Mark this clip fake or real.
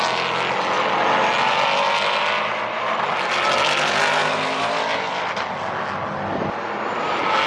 real